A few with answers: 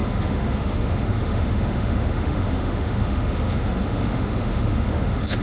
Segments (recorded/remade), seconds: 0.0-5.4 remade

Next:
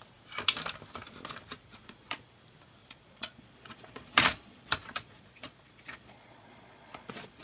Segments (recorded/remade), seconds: 0.0-1.6 recorded; 1.6-2.2 remade; 2.2-2.8 recorded; 2.8-7.4 remade

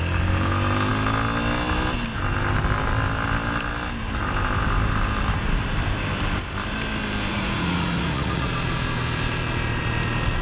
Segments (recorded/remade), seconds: 0.0-7.3 recorded; 7.3-8.5 remade; 8.5-10.4 recorded

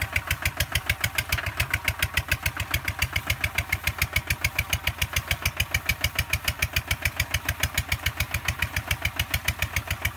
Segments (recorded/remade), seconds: 0.0-0.7 recorded; 0.7-1.6 remade; 1.6-5.9 recorded; 5.9-6.7 remade; 6.7-10.2 recorded

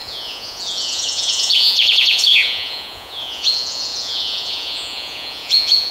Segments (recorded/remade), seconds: 0.0-5.9 remade

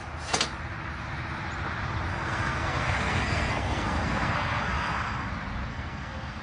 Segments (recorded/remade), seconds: 0.0-2.1 recorded; 2.1-5.3 remade; 5.3-5.7 recorded; 5.7-6.4 remade